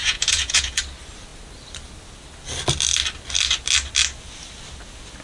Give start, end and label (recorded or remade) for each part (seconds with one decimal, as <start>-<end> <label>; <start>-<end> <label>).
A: 0.0-0.8 remade; 0.8-5.2 recorded

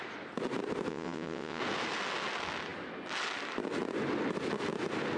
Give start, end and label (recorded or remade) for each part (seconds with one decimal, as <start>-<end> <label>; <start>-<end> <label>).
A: 0.0-0.9 recorded; 0.9-1.6 remade; 1.6-5.2 recorded